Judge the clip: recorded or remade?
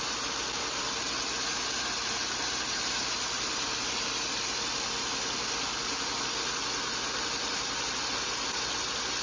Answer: recorded